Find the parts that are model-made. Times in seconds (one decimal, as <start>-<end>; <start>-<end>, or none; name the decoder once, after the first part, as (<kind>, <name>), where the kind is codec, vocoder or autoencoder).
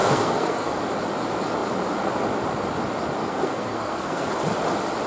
0.0-0.8 (codec, SNAC); 3.2-4.3